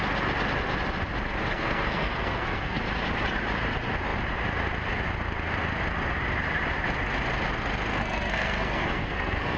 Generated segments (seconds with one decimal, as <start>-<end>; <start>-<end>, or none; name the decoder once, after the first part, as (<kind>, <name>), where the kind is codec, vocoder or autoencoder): 1.5-2.8 (codec, SNAC); 7.9-9.6